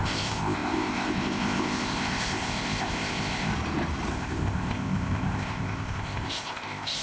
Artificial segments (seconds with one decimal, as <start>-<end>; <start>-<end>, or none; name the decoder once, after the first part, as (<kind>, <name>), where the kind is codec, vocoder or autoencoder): 0.0-3.5 (codec, ZipCodec); 4.1-7.0